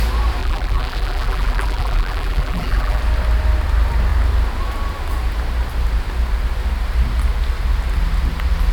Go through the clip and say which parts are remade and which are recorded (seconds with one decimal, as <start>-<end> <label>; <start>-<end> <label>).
0.0-0.4 recorded; 0.4-3.0 remade; 3.0-8.7 recorded